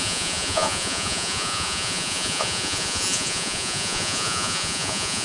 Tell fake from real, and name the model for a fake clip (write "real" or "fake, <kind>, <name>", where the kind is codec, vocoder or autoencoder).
fake, vocoder, Vocos